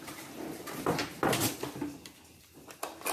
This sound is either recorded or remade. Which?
remade